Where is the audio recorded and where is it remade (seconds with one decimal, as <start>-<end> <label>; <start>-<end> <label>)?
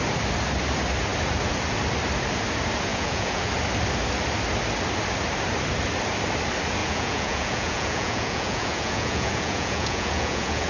0.0-2.9 recorded; 2.9-3.5 remade; 3.5-6.8 recorded; 6.8-10.7 remade